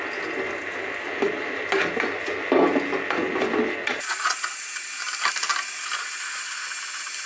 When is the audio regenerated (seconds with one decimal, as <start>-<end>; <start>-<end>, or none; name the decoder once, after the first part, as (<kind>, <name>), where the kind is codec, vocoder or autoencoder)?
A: 3.8-4.9 (vocoder, Vocos)